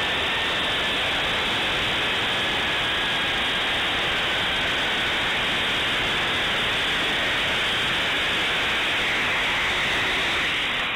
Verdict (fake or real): real